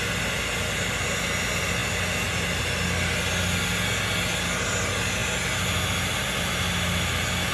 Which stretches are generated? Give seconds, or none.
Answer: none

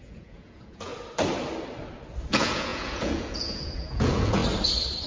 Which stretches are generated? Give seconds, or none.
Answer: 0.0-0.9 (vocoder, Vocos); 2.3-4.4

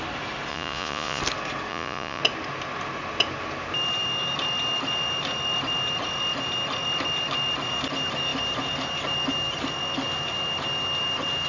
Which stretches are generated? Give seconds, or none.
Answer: 0.5-1.2 (vocoder, Vocos); 1.7-2.2

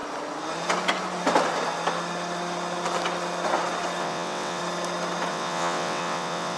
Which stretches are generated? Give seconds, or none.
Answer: 4.0-4.6 (vocoder, WaveNeXt); 5.3-6.6

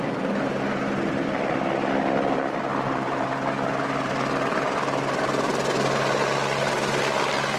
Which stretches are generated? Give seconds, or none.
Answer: 2.7-3.3 (vocoder, BigVGAN v2)

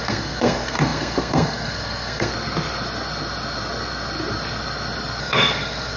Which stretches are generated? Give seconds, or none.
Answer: 0.0-2.3 (codec, SNAC); 5.2-6.0